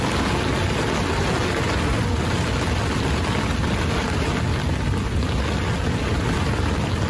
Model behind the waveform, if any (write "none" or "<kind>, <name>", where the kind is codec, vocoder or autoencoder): none